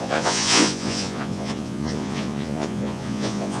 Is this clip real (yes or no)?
no